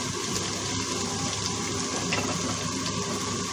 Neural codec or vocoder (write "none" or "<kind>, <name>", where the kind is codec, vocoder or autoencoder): none